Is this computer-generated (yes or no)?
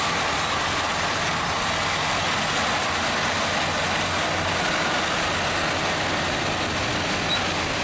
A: no